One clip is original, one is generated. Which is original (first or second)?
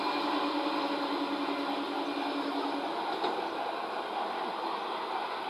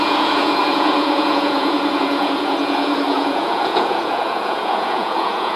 first